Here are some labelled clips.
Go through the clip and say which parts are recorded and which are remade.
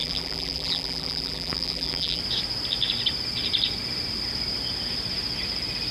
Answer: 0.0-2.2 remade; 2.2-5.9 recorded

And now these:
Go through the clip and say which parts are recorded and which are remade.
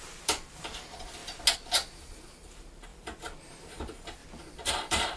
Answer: 0.0-1.2 remade; 1.2-2.0 recorded; 2.0-4.2 remade; 4.2-4.7 recorded; 4.7-5.2 remade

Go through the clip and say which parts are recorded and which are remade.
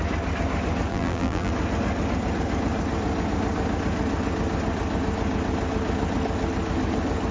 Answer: 0.0-0.9 recorded; 0.9-1.5 remade; 1.5-7.3 recorded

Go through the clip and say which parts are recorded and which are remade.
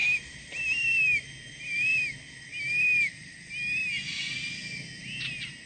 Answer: 0.0-5.7 recorded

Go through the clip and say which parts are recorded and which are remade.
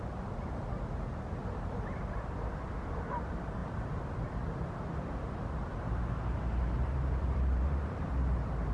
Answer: 0.0-1.4 recorded; 1.4-2.0 remade; 2.0-5.7 recorded; 5.7-8.0 remade; 8.0-8.7 recorded